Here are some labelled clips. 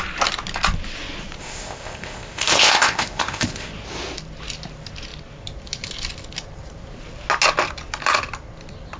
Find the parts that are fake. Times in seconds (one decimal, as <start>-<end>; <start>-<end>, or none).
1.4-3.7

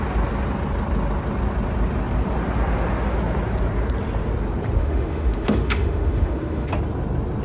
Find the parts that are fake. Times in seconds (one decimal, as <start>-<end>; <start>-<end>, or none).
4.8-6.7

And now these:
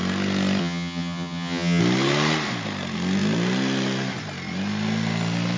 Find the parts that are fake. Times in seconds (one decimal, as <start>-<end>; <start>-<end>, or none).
0.6-1.8

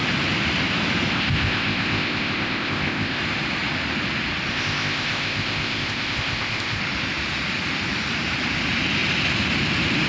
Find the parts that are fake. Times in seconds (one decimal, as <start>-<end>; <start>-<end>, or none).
1.1-3.2; 4.5-6.8